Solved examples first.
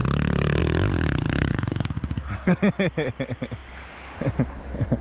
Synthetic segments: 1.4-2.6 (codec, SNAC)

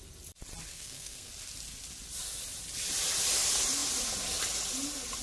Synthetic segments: 0.7-1.3 (codec, SNAC)

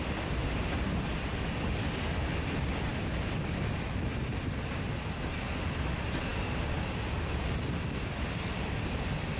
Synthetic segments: none

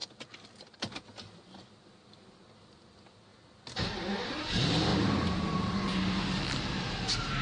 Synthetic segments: none